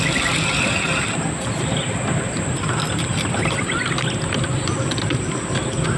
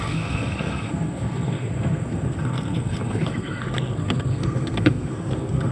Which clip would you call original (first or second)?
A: first